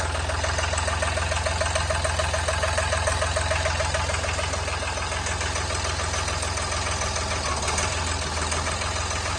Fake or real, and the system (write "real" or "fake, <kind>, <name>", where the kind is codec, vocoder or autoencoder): real